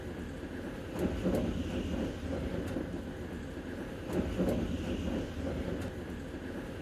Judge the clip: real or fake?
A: real